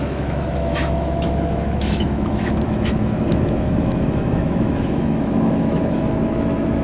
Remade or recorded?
remade